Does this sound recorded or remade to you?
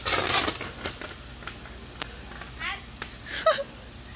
recorded